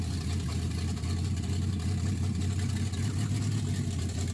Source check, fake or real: real